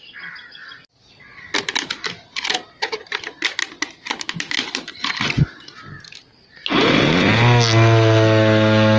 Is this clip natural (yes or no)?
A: yes